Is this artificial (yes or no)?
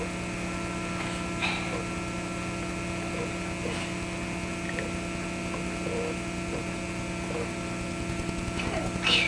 no